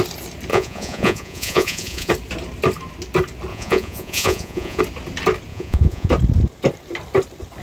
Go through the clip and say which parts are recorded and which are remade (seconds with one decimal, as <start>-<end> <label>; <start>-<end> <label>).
0.0-0.5 recorded; 0.5-2.1 remade; 2.1-3.5 recorded; 3.5-4.8 remade; 4.8-5.5 recorded; 5.5-6.1 remade; 6.1-7.6 recorded